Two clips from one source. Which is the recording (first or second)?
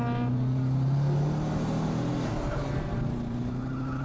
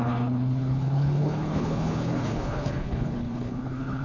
first